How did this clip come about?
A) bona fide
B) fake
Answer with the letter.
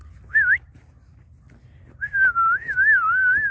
A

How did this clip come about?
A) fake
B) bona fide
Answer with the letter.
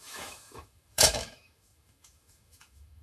A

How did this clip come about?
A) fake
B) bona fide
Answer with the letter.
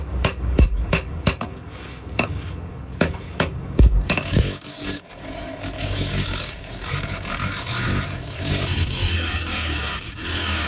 A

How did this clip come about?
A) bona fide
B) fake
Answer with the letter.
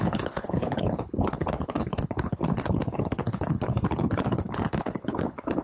B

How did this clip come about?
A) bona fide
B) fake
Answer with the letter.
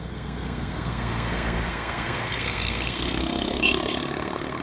B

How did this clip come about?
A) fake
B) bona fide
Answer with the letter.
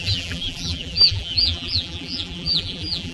A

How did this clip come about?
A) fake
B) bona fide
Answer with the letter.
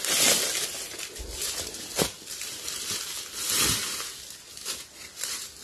B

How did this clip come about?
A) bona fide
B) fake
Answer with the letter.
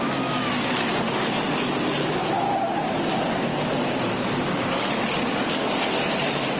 A